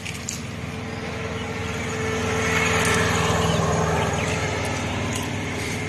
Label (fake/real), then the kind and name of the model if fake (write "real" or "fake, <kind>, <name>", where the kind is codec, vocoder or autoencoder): real